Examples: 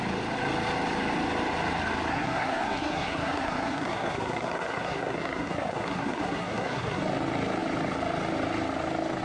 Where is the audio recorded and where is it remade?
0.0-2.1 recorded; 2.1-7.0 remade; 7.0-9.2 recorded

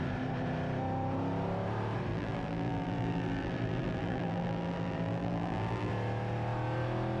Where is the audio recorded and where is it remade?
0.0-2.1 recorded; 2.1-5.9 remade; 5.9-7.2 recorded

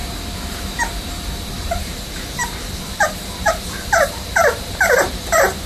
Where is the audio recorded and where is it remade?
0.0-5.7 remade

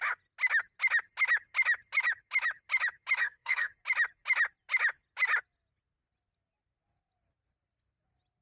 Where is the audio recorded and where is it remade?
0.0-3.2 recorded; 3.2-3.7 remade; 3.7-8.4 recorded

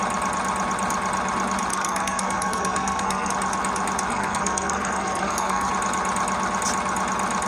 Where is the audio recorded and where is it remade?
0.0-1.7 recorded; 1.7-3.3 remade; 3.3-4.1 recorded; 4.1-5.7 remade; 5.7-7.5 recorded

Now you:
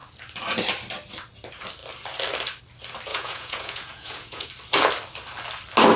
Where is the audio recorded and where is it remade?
0.0-3.1 recorded; 3.1-4.5 remade; 4.5-6.0 recorded

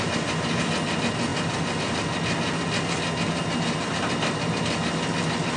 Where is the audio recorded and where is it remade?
0.0-5.6 recorded

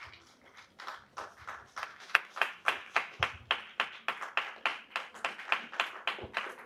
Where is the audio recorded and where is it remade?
0.0-1.9 recorded; 1.9-3.2 remade; 3.2-6.7 recorded